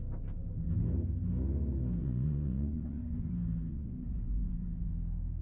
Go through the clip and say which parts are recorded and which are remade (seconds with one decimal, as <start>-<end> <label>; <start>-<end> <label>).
0.0-2.0 recorded; 2.0-3.3 remade; 3.3-3.7 recorded; 3.7-4.9 remade; 4.9-5.4 recorded